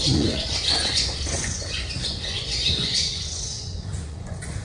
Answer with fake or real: fake